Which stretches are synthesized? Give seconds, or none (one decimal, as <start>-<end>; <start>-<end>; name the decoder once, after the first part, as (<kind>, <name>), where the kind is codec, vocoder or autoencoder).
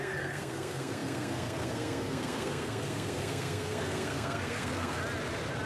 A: 0.0-5.0 (codec, SNAC)